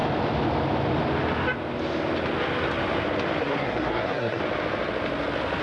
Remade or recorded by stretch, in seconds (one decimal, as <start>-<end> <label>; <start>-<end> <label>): 0.0-3.4 recorded; 3.4-4.4 remade; 4.4-5.6 recorded